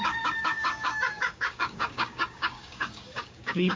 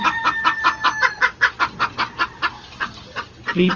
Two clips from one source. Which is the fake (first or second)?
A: first